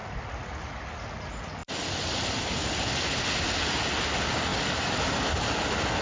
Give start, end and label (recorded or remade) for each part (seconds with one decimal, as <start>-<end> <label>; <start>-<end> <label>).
0.0-6.0 recorded